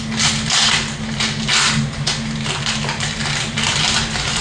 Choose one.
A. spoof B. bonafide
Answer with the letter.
B